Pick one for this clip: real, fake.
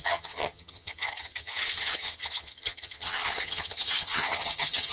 fake